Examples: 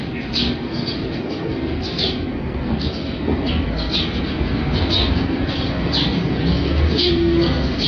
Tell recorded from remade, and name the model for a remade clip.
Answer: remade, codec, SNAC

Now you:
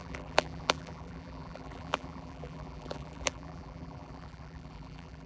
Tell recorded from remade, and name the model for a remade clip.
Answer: remade, vocoder, BigVGAN v2